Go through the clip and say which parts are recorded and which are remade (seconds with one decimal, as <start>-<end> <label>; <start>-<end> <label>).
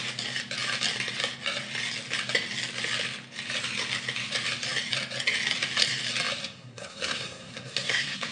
0.0-6.4 recorded; 6.4-8.3 remade